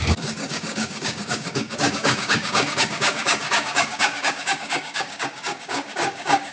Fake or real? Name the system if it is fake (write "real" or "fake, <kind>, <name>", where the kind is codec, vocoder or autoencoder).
fake, codec, DAC